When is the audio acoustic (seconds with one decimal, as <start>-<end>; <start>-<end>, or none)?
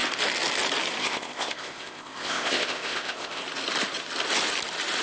0.0-1.0; 3.4-5.0